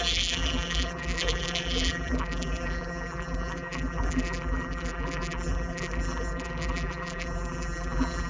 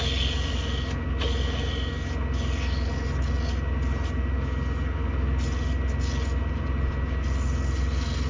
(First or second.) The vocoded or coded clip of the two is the first